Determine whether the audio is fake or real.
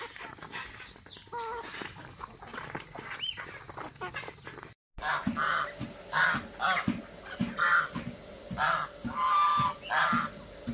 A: real